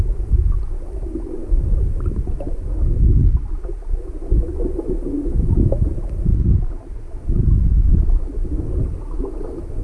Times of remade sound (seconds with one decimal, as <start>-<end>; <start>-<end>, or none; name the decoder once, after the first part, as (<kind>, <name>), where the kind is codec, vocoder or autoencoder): none